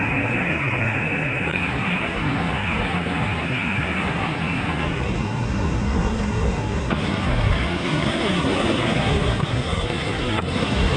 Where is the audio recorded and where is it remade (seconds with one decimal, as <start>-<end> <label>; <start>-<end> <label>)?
0.0-11.0 remade